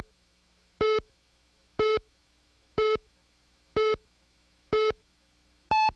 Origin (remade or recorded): remade